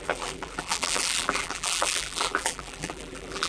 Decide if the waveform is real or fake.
fake